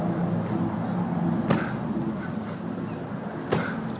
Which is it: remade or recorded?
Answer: recorded